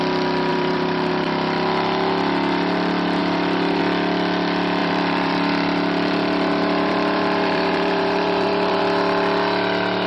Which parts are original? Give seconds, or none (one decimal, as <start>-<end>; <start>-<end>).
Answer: 0.0-0.5; 1.1-3.2; 3.8-4.8; 8.8-10.1